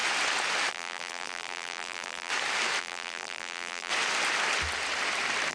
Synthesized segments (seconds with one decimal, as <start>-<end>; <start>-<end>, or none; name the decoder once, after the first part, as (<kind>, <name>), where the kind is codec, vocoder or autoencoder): 0.7-2.3 (vocoder, BigVGAN v2); 2.8-3.9